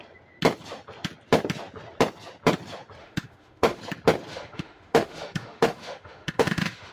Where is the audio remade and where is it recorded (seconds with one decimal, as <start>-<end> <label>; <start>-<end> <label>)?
0.0-3.0 recorded; 3.0-3.8 remade; 3.8-4.3 recorded; 4.3-6.9 remade